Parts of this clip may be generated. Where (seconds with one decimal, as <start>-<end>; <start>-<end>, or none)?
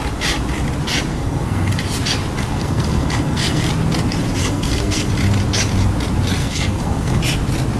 1.1-1.7; 2.4-3.7; 4.4-5.1; 6.4-7.2